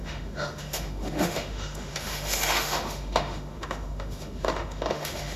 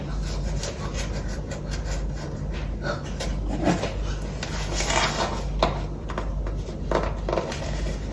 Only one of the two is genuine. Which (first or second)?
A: second